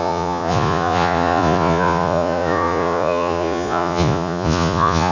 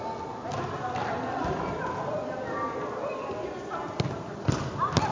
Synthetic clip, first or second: first